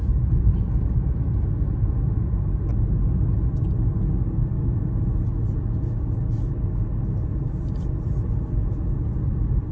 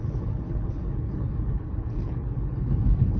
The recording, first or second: first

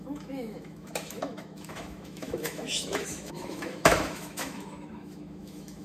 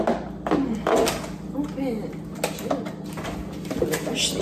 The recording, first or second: second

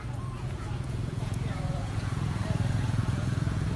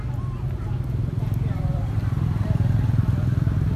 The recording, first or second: second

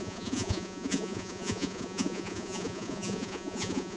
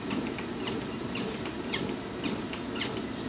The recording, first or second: second